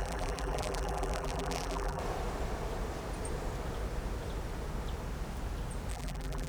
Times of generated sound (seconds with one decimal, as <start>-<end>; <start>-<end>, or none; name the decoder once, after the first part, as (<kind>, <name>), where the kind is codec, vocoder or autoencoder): 0.0-2.0 (vocoder, BigVGAN v2); 5.9-6.5